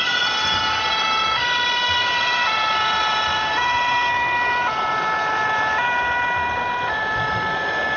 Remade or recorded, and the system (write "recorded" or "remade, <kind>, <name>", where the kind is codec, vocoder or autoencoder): remade, vocoder, BigVGAN v2